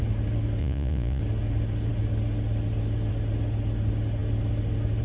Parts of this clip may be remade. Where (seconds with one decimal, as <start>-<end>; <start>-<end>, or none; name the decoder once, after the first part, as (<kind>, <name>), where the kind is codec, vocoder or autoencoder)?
0.6-1.2 (vocoder, Vocos)